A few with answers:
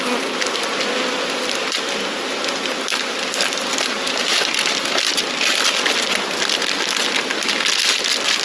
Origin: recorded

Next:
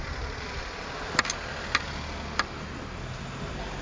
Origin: recorded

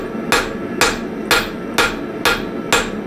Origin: recorded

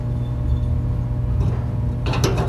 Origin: recorded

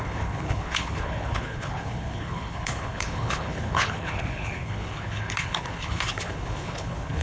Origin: remade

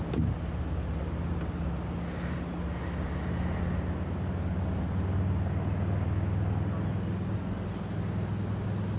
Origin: recorded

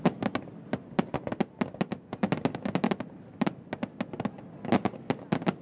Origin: recorded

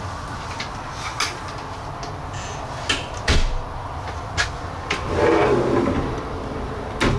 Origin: recorded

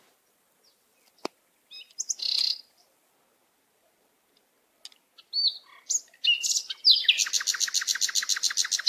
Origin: recorded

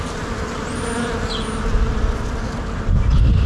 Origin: recorded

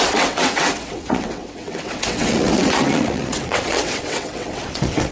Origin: remade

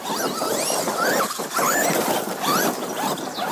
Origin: recorded